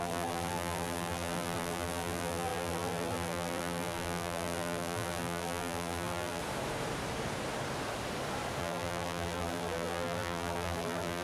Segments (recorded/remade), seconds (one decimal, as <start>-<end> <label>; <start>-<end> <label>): 0.0-6.4 remade; 6.4-8.6 recorded; 8.6-11.2 remade